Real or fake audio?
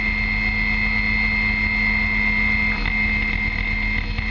real